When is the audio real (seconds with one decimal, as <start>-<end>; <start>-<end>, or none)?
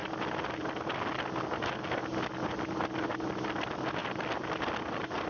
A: 0.0-5.3